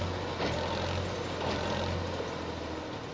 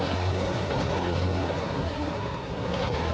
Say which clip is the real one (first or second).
first